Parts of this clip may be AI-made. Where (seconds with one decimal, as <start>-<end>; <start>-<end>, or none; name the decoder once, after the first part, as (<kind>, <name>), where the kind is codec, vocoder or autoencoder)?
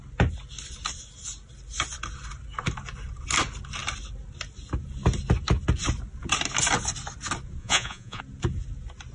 7.6-8.2 (vocoder, Vocos)